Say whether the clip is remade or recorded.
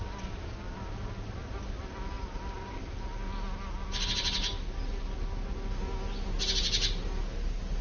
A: recorded